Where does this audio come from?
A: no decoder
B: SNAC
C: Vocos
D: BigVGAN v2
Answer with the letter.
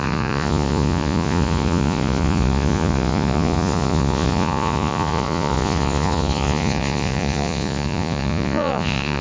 C